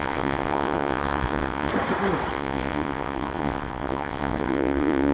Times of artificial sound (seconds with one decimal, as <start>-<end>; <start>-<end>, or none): 0.0-1.7; 2.3-5.1